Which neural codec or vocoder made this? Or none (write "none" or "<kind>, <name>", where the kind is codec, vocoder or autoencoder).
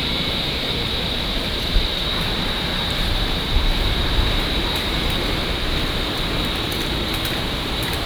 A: vocoder, BigVGAN v2